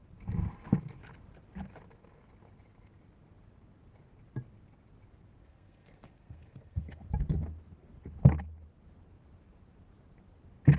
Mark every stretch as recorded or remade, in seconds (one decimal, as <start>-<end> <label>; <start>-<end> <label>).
0.0-5.4 recorded; 5.4-7.1 remade; 7.1-10.8 recorded

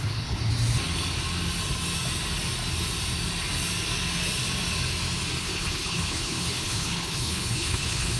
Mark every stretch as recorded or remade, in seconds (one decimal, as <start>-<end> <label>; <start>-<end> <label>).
0.0-0.5 remade; 0.5-5.4 recorded; 5.4-8.2 remade

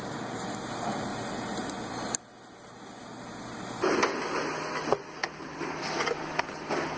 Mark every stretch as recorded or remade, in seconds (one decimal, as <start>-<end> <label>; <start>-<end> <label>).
0.0-7.0 recorded

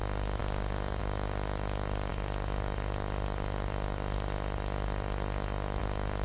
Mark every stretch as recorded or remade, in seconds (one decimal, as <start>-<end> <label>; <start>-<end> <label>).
0.0-6.2 recorded

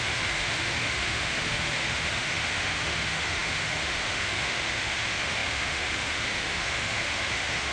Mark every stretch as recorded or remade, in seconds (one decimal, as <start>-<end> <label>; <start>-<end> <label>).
0.0-7.7 remade

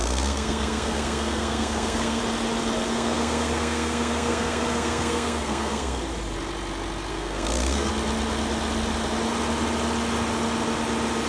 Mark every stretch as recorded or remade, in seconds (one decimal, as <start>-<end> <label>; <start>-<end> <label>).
0.0-2.2 remade; 2.2-2.9 recorded; 2.9-6.0 remade; 6.0-7.1 recorded; 7.1-7.9 remade; 7.9-11.3 recorded

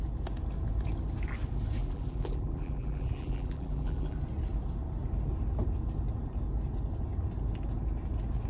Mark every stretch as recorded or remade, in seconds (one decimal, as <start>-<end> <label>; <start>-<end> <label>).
0.0-1.8 recorded; 1.8-4.2 remade; 4.2-8.5 recorded

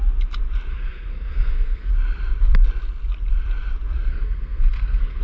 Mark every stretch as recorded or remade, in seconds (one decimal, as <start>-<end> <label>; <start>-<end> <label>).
0.0-0.7 recorded; 0.7-1.9 remade; 1.9-4.1 recorded; 4.1-5.2 remade